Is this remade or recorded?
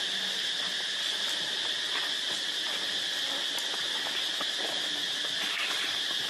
recorded